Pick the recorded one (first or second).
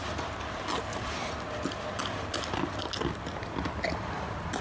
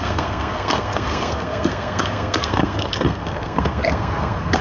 first